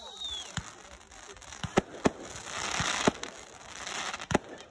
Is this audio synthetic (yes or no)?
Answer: no